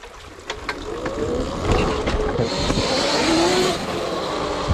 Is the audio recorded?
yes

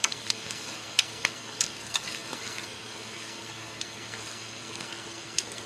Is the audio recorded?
no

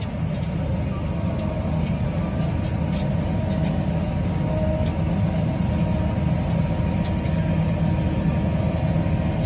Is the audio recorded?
yes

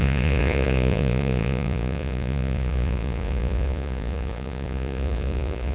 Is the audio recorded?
no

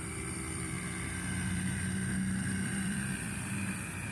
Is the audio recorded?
no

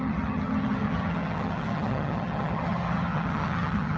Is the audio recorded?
no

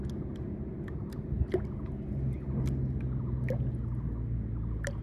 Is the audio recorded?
yes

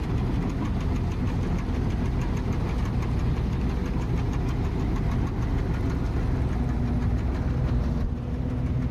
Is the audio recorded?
yes